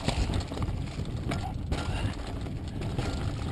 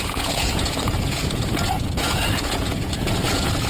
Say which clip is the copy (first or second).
second